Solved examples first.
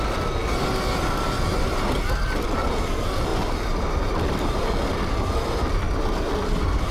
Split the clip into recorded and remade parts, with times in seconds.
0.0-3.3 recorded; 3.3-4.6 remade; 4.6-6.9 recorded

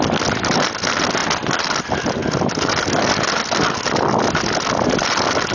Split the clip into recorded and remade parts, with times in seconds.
0.0-5.5 recorded

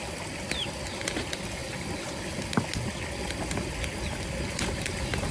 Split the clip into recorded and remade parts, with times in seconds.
0.0-5.3 recorded

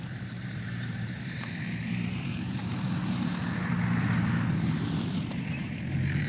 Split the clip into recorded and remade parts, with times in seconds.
0.0-3.3 remade; 3.3-4.0 recorded; 4.0-6.3 remade

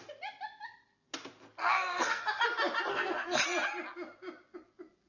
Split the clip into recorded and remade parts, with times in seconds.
0.0-1.6 recorded; 1.6-2.2 remade; 2.2-2.9 recorded; 2.9-3.4 remade; 3.4-5.1 recorded

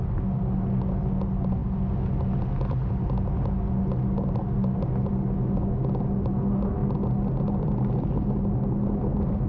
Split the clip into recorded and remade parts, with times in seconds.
0.0-9.5 recorded